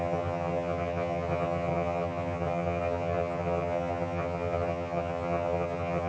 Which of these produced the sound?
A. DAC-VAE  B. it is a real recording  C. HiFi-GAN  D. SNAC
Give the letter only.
C